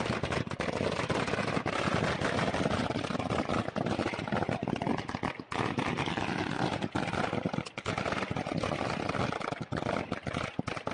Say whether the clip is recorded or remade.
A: recorded